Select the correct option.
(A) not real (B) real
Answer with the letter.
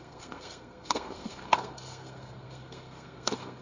A